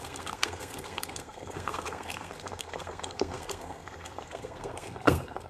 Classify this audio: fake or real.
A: fake